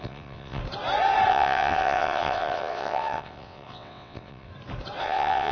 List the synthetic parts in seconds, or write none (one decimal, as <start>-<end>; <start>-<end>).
0.0-0.6; 1.3-4.5; 5.0-5.5